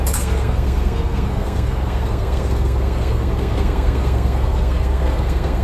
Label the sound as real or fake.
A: fake